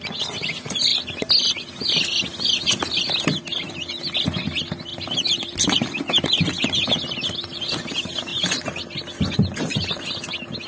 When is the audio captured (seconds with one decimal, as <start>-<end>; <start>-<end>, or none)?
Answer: 0.0-4.9; 6.0-10.7